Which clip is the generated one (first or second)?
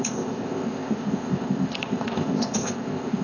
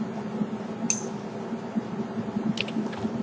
first